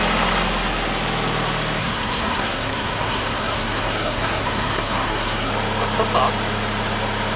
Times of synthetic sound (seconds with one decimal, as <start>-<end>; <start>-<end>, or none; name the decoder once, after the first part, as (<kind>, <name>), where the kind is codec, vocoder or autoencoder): 1.8-5.5 (codec, SNAC)